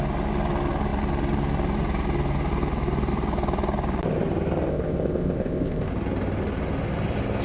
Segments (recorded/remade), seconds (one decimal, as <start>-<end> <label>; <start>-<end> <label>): 0.0-4.7 recorded; 4.7-5.9 remade; 5.9-7.4 recorded